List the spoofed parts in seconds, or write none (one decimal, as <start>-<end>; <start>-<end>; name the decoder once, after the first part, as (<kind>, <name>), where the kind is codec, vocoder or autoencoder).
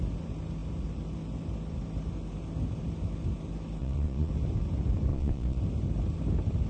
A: 3.8-4.3 (vocoder, Vocos); 5.1-5.6